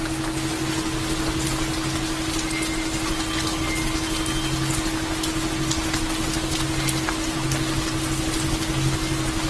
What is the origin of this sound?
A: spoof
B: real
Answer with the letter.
B